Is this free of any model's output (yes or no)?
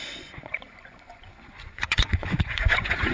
no